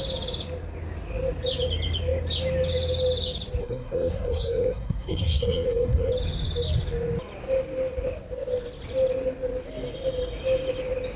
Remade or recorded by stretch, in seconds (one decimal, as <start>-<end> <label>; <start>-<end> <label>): 0.0-3.6 recorded; 3.6-6.1 remade; 6.1-11.2 recorded